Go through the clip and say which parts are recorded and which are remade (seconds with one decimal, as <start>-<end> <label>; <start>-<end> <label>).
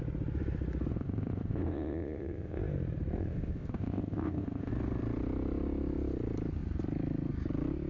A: 0.0-0.9 recorded; 0.9-2.6 remade; 2.6-3.2 recorded; 3.2-4.7 remade; 4.7-7.9 recorded